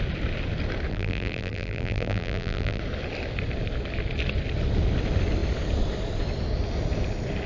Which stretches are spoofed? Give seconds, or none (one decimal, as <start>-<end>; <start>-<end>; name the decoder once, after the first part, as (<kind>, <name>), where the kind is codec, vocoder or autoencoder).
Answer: 0.9-2.8 (vocoder, BigVGAN v2)